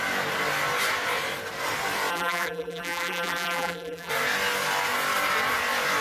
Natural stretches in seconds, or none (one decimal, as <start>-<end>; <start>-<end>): 0.0-2.1; 4.1-6.0